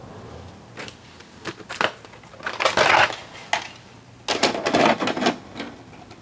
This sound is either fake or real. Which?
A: real